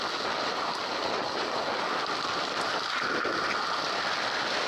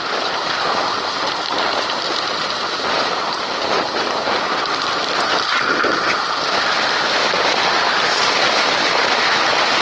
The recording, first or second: first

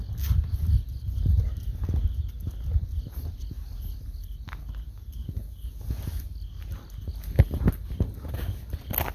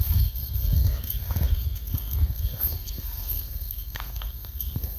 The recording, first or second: first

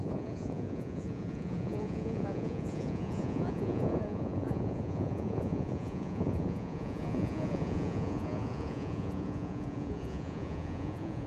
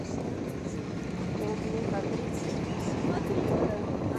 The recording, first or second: second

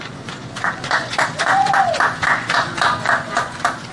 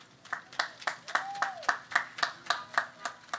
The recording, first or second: second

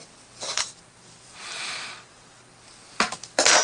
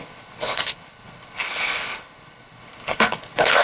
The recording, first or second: first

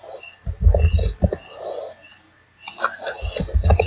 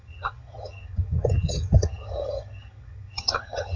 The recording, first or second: first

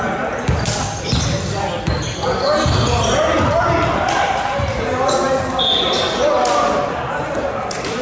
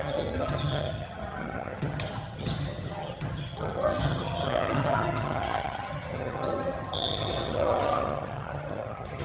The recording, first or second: first